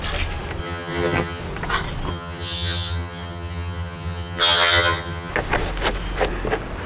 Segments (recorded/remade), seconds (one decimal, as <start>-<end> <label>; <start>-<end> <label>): 0.0-0.6 recorded; 0.6-1.4 remade; 1.4-2.1 recorded; 2.1-5.3 remade; 5.3-6.9 recorded